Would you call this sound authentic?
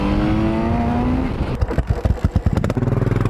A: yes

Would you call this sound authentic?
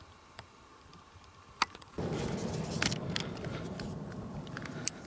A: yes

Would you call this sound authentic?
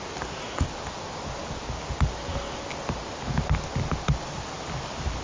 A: yes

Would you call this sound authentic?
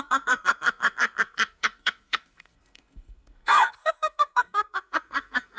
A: no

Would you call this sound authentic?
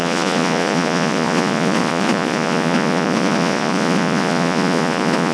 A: no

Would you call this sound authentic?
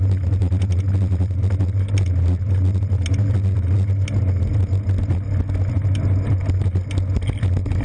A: yes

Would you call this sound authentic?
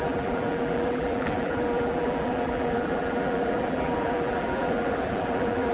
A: no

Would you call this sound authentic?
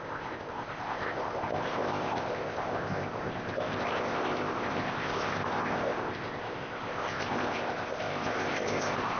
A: no